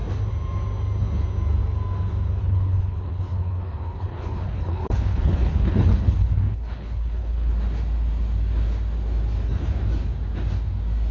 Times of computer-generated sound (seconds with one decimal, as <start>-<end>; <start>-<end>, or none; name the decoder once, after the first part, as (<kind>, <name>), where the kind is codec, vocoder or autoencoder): 2.4-7.5 (codec, HILCodec)